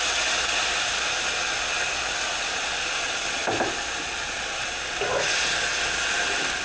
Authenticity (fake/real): real